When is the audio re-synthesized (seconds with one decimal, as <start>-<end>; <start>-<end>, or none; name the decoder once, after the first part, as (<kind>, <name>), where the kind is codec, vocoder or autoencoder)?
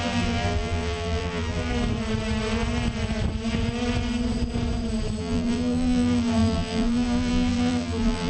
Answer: 0.0-1.7 (vocoder, BigVGAN v2); 5.2-8.3